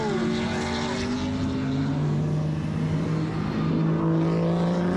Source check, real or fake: real